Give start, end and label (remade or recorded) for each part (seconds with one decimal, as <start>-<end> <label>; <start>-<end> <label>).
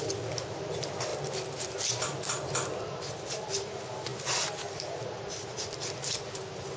0.0-6.8 recorded